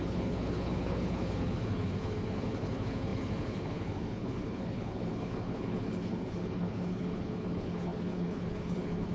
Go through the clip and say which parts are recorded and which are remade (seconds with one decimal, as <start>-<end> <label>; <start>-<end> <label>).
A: 0.0-9.1 remade